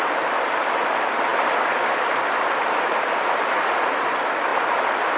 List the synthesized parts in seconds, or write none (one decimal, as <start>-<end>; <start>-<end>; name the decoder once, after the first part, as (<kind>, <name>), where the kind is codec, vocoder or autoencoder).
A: none